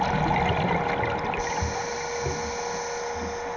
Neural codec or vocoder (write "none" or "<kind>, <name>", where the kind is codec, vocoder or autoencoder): none